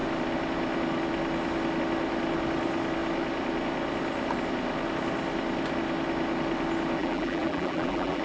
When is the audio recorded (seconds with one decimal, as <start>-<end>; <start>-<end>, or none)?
0.0-7.0